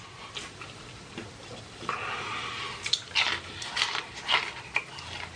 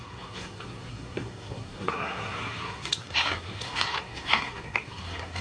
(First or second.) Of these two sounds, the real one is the first